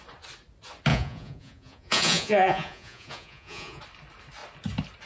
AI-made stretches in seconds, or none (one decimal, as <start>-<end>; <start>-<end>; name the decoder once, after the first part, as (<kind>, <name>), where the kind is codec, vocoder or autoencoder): 0.9-3.8 (vocoder, Vocos)